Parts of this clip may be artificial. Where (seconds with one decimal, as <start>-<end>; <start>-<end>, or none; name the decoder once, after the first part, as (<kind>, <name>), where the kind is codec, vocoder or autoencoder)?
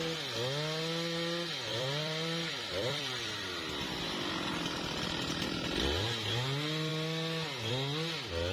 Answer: 1.7-4.0 (vocoder, BigVGAN v2)